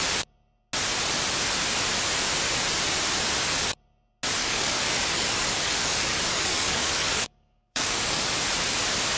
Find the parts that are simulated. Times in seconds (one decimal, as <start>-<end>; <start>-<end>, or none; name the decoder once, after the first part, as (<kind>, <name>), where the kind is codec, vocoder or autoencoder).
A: 4.4-8.3 (codec, DAC)